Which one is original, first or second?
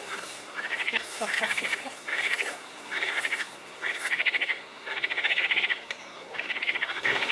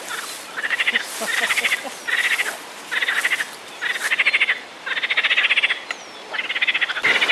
second